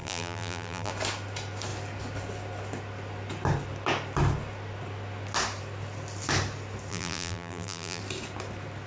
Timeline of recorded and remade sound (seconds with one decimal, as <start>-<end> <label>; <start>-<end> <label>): 0.0-0.9 remade; 0.9-6.9 recorded; 6.9-8.0 remade; 8.0-8.9 recorded